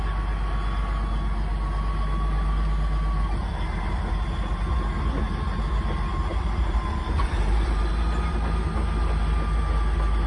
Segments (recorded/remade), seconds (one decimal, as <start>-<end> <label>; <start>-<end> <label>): 0.0-6.3 recorded; 6.3-7.9 remade; 7.9-10.3 recorded